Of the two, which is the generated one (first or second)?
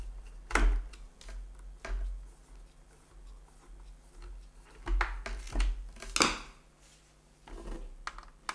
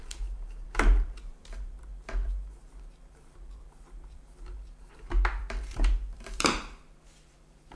second